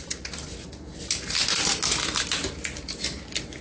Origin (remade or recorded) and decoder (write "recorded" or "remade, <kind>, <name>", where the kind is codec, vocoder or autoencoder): recorded